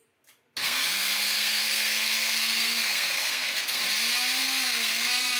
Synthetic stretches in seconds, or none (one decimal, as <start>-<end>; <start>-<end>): 0.6-3.8; 4.4-5.4